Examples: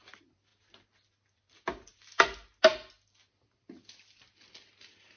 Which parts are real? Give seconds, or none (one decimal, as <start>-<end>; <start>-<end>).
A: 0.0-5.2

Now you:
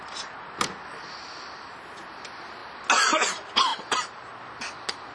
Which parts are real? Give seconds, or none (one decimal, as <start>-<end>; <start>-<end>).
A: 0.0-3.7; 4.4-5.1

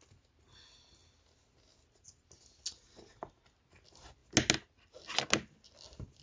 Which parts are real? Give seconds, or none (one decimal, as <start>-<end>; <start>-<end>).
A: 0.0-6.2